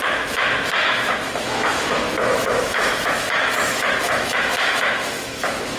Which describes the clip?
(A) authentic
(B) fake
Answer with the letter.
B